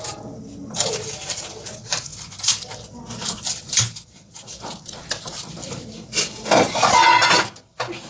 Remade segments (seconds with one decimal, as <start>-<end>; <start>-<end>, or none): none